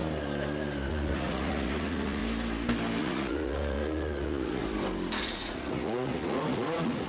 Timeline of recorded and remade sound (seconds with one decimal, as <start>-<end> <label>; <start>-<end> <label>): 0.0-0.9 recorded; 0.9-2.2 remade; 2.2-3.0 recorded; 3.0-4.6 remade; 4.6-5.2 recorded; 5.2-7.1 remade